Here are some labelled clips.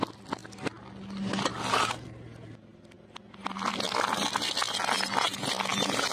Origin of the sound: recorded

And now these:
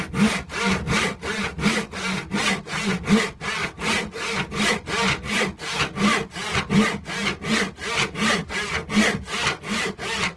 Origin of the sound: recorded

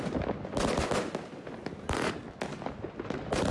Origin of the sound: recorded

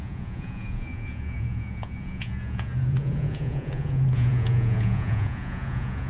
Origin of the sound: remade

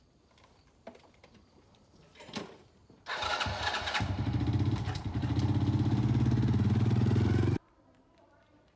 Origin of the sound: remade